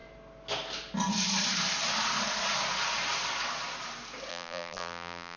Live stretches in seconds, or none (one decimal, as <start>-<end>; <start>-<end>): 0.0-4.3

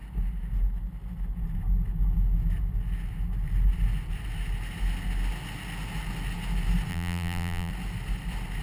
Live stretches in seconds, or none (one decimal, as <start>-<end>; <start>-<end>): 0.0-6.9; 7.7-8.6